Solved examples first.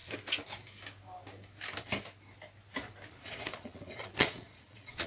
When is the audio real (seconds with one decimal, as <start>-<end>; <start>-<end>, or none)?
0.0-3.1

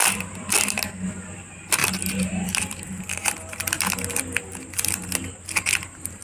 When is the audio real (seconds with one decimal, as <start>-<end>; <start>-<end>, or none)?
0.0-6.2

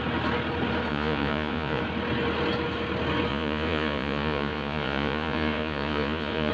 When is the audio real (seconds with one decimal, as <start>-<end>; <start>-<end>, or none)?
0.0-0.9; 1.8-3.3